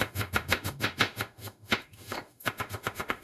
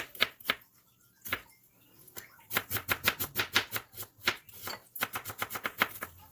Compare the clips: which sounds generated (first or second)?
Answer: first